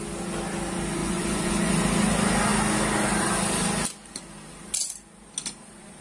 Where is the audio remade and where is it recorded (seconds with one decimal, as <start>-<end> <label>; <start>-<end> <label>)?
0.0-1.0 recorded; 1.0-1.7 remade; 1.7-6.0 recorded